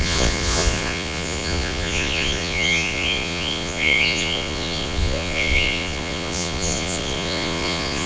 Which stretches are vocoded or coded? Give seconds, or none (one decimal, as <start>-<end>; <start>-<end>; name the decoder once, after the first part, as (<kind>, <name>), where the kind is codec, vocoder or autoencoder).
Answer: 0.0-8.1 (vocoder, Vocos)